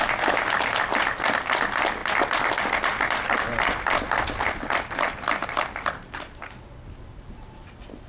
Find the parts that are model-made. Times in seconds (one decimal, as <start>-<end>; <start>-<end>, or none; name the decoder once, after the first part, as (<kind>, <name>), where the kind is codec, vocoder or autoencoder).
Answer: none